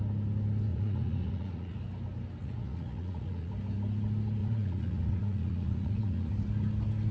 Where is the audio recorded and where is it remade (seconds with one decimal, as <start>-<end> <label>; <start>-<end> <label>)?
0.0-0.7 recorded; 0.7-1.8 remade; 1.8-2.4 recorded; 2.4-3.5 remade; 3.5-4.4 recorded; 4.4-6.3 remade; 6.3-7.1 recorded